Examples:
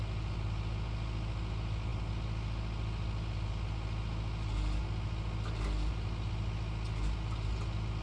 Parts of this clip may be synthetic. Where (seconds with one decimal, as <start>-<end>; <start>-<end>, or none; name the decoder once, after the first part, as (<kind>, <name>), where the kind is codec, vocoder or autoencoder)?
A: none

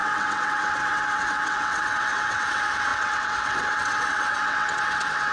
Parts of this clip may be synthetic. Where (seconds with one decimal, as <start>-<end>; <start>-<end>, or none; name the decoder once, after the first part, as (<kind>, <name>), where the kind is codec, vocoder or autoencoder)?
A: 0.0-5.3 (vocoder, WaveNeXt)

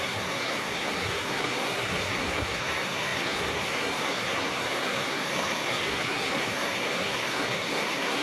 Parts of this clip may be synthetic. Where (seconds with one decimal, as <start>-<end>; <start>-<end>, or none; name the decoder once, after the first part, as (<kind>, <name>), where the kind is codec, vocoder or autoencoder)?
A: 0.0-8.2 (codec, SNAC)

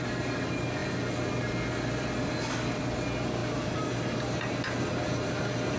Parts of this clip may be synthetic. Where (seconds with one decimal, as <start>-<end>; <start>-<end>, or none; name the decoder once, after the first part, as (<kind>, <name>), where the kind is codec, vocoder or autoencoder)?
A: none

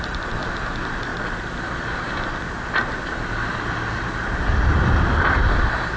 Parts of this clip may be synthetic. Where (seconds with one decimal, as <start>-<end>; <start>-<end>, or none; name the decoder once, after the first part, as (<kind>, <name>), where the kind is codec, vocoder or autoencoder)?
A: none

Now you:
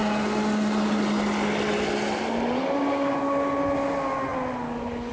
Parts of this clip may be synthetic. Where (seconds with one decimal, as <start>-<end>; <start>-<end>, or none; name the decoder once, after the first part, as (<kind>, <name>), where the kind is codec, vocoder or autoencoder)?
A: none

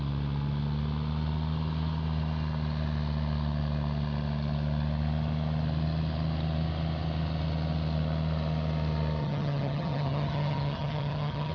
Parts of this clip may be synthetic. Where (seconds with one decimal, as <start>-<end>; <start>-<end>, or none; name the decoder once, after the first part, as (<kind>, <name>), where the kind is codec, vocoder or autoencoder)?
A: 9.2-11.5 (vocoder, HiFi-GAN)